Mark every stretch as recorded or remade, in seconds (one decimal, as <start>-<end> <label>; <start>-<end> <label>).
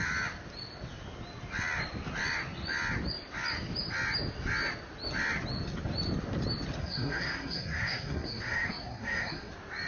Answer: 0.0-6.8 recorded; 6.8-9.5 remade; 9.5-9.9 recorded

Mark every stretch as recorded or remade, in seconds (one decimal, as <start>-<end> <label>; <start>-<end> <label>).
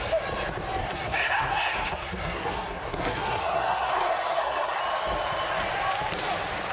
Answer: 0.0-0.8 recorded; 0.8-4.8 remade; 4.8-6.7 recorded